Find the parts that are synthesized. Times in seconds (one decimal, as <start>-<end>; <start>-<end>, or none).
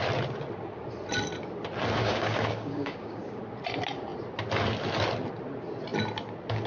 2.0-3.4